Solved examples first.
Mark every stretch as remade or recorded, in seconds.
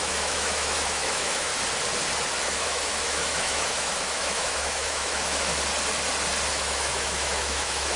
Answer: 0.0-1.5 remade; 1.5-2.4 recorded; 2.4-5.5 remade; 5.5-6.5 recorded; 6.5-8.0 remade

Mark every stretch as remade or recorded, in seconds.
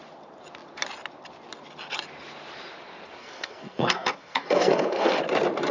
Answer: 0.0-3.2 recorded; 3.2-5.2 remade; 5.2-5.7 recorded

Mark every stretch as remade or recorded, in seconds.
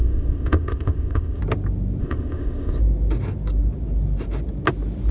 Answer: 0.0-1.4 remade; 1.4-2.0 recorded; 2.0-2.8 remade; 2.8-5.1 recorded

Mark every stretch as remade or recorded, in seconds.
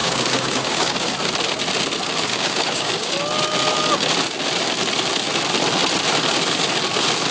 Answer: 0.0-1.1 remade; 1.1-2.3 recorded; 2.3-3.1 remade; 3.1-7.3 recorded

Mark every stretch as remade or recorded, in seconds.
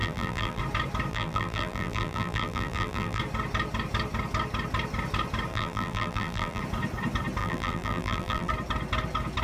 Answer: 0.0-0.6 remade; 0.6-1.1 recorded; 1.1-3.2 remade; 3.2-5.5 recorded; 5.5-6.6 remade; 6.6-7.4 recorded; 7.4-8.5 remade; 8.5-9.4 recorded